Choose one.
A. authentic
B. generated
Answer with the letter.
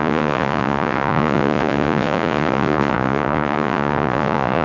B